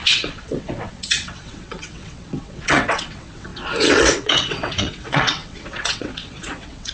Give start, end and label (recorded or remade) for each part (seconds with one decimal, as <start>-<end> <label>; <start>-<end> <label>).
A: 0.0-6.9 remade